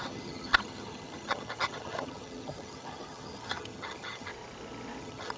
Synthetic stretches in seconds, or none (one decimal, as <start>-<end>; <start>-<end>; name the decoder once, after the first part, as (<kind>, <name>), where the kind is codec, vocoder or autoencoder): 0.0-4.3 (vocoder, HiFi-GAN); 5.0-5.4